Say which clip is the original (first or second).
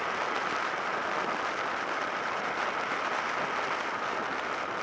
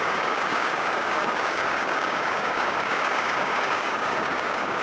first